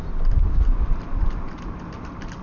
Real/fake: real